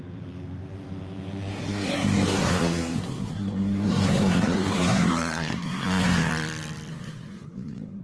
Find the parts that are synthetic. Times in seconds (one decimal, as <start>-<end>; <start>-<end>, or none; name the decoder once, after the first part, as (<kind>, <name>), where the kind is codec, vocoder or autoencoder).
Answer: 1.5-6.3 (codec, SNAC); 6.9-8.0